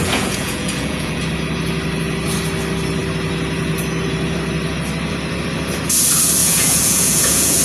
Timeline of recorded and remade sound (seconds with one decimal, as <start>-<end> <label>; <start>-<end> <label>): 0.0-1.2 remade; 1.2-6.4 recorded; 6.4-7.6 remade